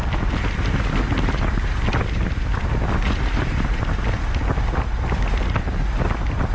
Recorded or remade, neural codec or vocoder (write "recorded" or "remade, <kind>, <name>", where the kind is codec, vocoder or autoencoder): recorded